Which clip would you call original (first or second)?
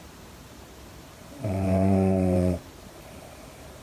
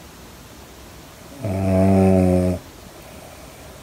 second